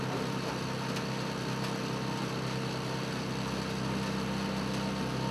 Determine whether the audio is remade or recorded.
recorded